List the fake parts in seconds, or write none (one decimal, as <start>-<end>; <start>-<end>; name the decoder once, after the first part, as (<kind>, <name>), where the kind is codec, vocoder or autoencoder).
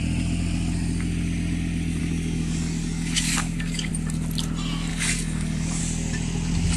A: 2.0-3.9 (codec, DAC); 4.9-5.8